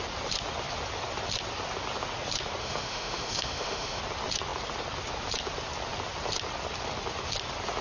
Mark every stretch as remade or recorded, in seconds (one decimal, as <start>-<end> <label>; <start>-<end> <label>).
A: 0.0-2.6 recorded; 2.6-4.0 remade; 4.0-7.8 recorded